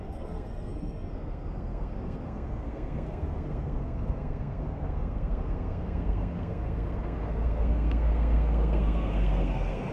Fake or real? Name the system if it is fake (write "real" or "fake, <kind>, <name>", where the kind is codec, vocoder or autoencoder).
fake, codec, SNAC